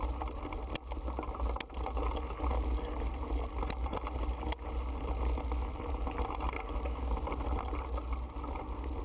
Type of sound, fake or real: real